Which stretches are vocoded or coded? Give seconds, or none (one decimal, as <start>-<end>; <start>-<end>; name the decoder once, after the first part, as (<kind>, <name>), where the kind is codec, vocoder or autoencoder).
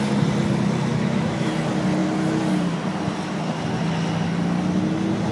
0.9-1.5 (autoencoder, DAC-VAE)